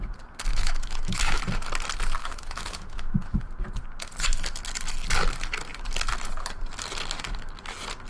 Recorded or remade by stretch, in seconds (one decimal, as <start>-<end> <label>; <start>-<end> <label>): 0.0-0.5 recorded; 0.5-1.4 remade; 1.4-2.2 recorded; 2.2-3.4 remade; 3.4-8.1 recorded